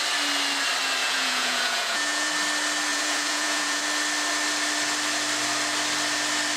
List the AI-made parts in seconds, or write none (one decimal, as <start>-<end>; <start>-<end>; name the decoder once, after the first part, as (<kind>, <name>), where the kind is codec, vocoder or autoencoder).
1.0-2.3 (vocoder, Vocos); 2.9-3.8